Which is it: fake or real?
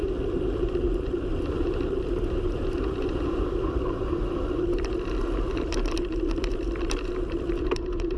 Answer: fake